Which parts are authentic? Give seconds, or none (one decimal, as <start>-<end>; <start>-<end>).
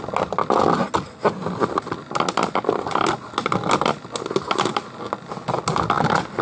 0.0-6.4